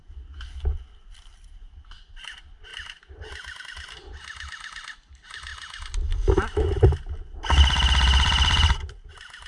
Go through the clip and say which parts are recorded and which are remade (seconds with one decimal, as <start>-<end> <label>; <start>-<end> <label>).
0.0-9.5 recorded

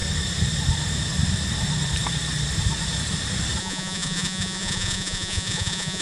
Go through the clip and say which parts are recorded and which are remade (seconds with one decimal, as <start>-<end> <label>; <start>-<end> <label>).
0.0-3.6 recorded; 3.6-6.0 remade

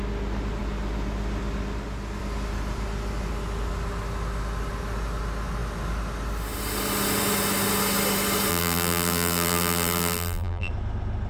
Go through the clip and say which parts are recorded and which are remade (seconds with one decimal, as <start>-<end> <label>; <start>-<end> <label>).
0.0-8.5 recorded; 8.5-10.7 remade; 10.7-11.3 recorded

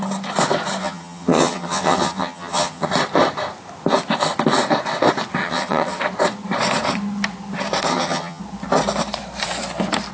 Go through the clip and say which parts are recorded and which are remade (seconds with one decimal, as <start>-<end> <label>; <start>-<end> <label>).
0.0-0.8 recorded; 0.8-2.9 remade; 2.9-5.4 recorded; 5.4-6.0 remade; 6.0-7.9 recorded; 7.9-8.4 remade; 8.4-10.1 recorded

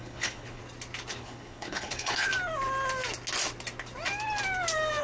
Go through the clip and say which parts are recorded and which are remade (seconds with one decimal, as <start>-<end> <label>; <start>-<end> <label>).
0.0-0.6 remade; 0.6-1.1 recorded; 1.1-2.3 remade; 2.3-5.0 recorded

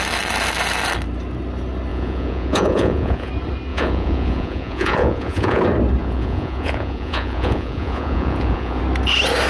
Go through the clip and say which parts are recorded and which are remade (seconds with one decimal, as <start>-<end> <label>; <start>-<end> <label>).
0.0-1.9 recorded; 1.9-3.3 remade; 3.3-3.7 recorded; 3.7-5.6 remade; 5.6-6.0 recorded; 6.0-8.8 remade; 8.8-9.5 recorded